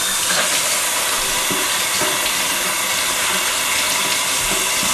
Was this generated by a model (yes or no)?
no